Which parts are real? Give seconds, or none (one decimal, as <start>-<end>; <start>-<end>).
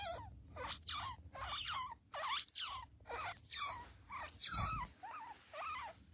0.0-6.1